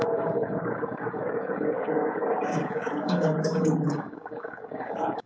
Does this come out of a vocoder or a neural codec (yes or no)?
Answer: yes